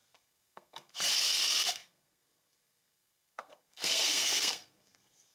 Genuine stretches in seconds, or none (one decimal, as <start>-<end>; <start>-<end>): none